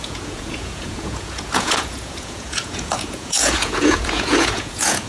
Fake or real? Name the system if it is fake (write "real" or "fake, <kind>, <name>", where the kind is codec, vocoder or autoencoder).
fake, vocoder, Vocos